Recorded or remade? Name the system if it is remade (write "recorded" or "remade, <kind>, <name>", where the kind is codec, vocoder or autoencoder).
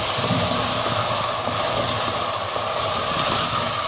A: recorded